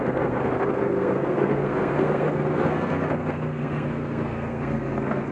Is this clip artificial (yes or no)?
yes